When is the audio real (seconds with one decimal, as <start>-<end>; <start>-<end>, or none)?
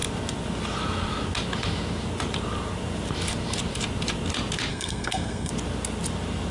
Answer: 0.0-4.7; 5.5-6.5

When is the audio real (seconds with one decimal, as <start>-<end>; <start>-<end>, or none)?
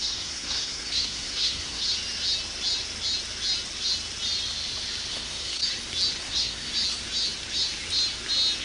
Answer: 1.8-5.1; 5.6-6.2; 6.7-8.6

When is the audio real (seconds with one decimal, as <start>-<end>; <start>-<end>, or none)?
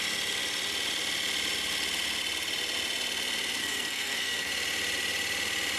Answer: 0.0-3.6; 4.5-5.8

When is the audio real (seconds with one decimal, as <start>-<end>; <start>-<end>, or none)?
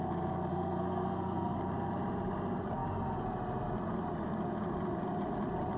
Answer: 0.0-0.5; 1.6-5.8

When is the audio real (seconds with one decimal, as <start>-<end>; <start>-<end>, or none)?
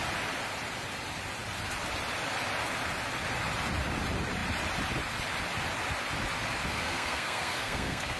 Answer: 0.0-6.7